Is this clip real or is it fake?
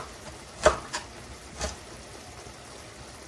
fake